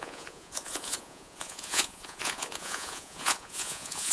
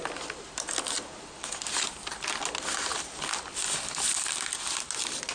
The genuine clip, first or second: second